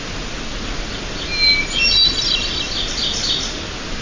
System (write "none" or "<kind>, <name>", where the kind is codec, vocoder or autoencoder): none